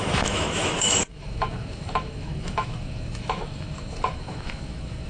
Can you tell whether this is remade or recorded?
remade